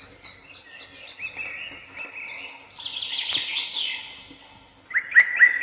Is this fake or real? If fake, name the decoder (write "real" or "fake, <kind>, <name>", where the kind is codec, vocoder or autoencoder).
real